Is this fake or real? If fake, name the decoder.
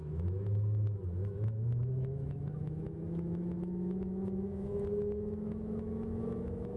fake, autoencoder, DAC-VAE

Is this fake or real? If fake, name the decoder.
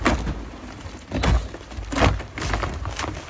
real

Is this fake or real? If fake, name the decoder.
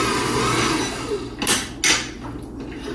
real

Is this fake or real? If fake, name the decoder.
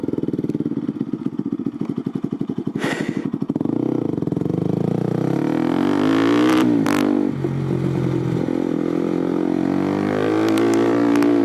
real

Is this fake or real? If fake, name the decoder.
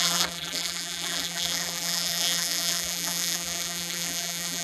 fake, vocoder, BigVGAN v2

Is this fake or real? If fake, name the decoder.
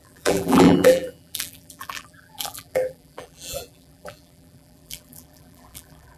fake, vocoder, BigVGAN v2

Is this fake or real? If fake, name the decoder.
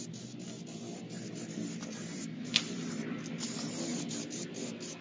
real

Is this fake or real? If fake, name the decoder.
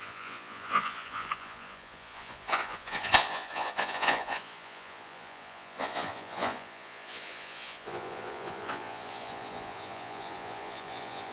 fake, vocoder, Vocos